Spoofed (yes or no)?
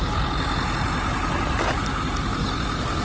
no